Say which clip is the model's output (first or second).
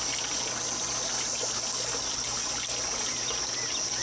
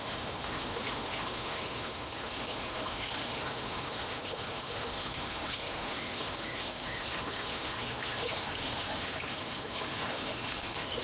second